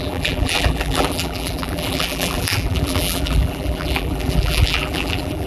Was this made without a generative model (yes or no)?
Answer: no